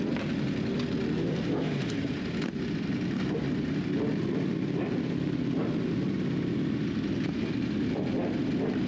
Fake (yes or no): no